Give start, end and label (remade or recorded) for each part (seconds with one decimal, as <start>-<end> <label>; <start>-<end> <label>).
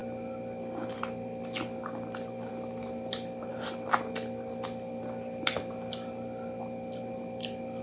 0.0-7.8 recorded